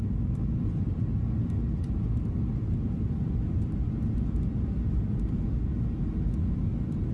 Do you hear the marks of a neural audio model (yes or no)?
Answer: no